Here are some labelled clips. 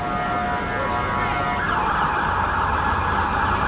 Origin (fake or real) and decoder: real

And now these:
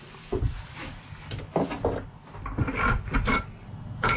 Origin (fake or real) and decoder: real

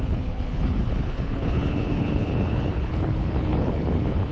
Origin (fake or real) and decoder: fake, codec, HILCodec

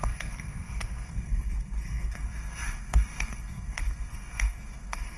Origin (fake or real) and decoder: fake, codec, SNAC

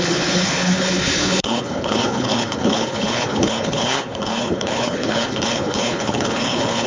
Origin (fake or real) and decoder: fake, codec, HILCodec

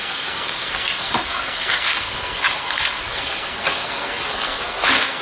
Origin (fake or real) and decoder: fake, codec, SNAC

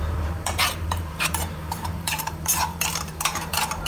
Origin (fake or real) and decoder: fake, vocoder, BigVGAN v2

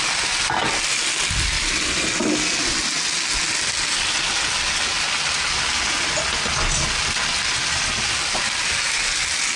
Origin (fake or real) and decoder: real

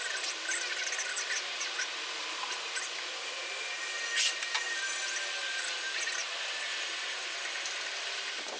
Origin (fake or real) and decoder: real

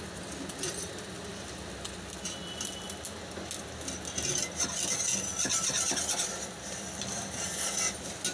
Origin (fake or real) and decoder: real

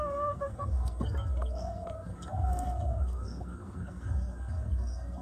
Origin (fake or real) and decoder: fake, codec, SNAC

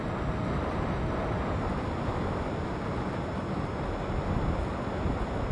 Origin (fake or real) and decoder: real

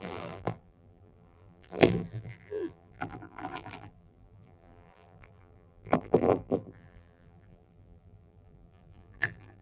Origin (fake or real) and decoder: fake, vocoder, BigVGAN v2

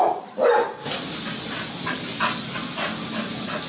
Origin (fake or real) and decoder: real